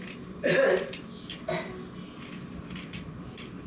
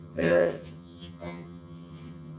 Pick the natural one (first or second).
first